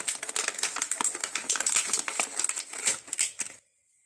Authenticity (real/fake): real